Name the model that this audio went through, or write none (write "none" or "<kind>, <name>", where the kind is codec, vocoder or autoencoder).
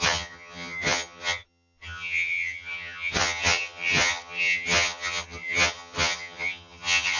vocoder, HiFi-GAN